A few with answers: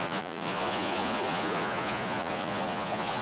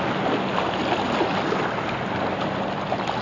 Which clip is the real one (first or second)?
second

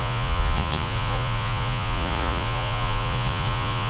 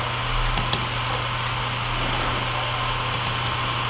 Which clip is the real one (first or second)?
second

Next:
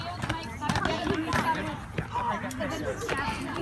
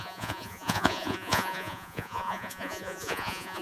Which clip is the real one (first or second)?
first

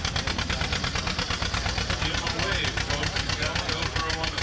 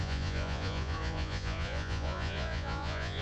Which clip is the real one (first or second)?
first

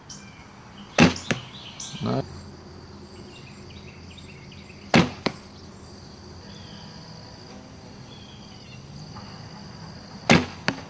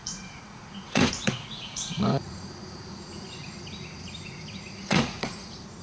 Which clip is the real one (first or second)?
first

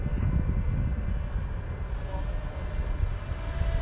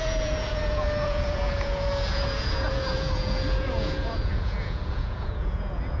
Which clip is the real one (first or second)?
first